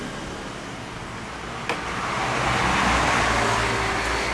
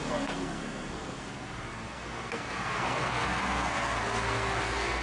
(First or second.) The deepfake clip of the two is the second